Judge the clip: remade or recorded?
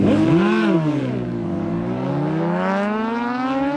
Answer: remade